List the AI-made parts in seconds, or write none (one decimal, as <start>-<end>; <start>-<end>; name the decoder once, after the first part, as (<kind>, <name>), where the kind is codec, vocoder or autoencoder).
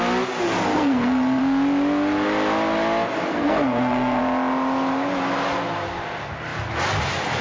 0.7-1.4 (codec, SNAC); 3.3-4.2